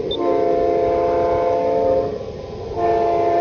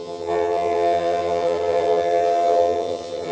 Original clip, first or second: first